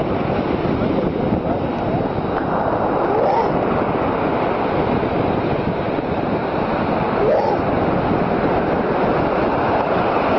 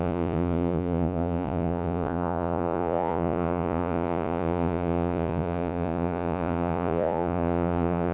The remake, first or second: second